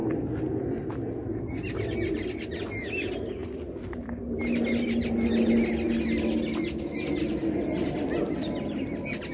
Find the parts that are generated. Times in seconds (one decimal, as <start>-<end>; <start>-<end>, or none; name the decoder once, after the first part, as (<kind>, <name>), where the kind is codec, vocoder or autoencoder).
none